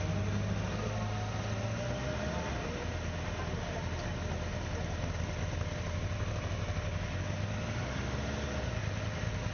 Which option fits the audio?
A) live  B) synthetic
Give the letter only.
A